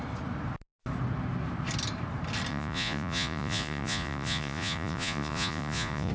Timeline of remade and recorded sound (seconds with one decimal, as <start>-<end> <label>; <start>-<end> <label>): 0.0-2.5 recorded; 2.5-6.1 remade